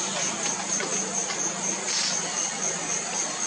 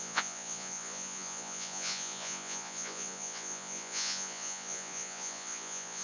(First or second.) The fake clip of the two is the second